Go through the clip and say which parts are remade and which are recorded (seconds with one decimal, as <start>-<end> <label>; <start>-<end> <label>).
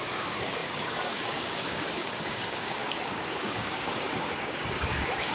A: 0.0-5.3 remade